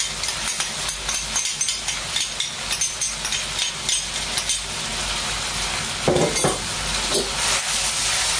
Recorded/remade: recorded